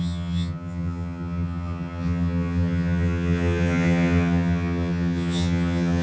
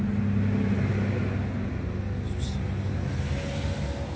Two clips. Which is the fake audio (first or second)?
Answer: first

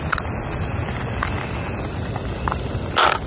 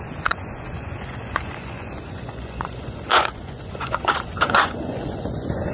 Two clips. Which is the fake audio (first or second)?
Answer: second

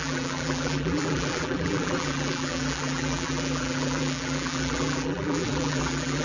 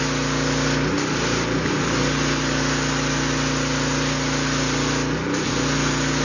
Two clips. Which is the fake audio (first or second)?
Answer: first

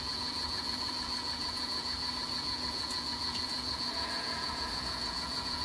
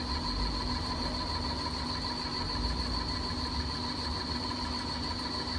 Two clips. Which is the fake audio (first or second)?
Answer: first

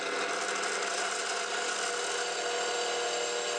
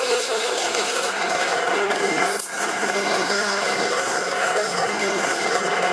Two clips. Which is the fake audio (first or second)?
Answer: second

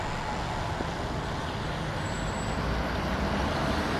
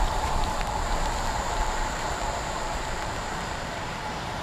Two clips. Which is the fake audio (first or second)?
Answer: second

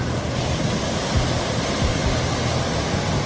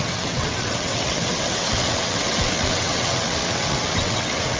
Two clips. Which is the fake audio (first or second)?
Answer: second